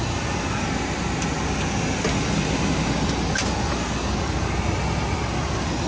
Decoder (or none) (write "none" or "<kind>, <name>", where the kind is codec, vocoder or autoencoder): none